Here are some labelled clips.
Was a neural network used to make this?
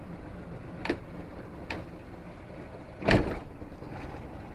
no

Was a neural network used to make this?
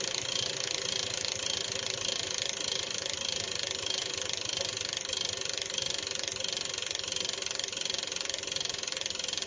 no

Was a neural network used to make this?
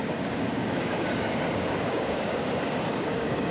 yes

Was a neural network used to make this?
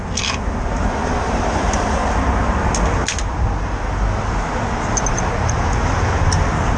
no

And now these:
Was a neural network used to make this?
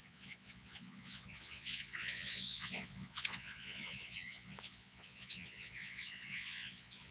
yes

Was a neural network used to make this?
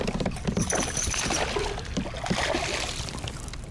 no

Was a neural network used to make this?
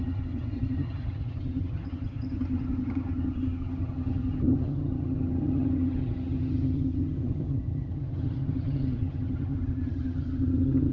yes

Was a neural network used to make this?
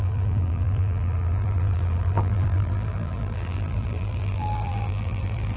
yes